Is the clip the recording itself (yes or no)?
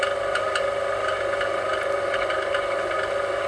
no